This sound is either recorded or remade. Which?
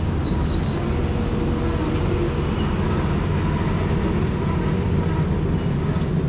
recorded